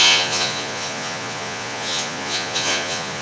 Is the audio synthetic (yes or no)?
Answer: yes